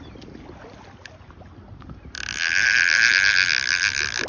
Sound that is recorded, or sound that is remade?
recorded